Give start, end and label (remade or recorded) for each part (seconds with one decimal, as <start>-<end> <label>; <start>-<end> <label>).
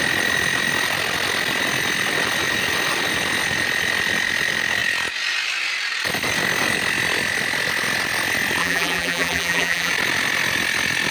0.0-8.6 recorded; 8.6-9.9 remade; 9.9-11.1 recorded